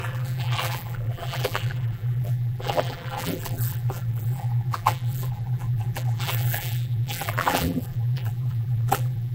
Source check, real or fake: fake